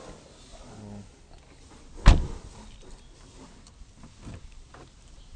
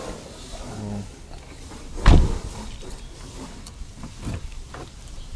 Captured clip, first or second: first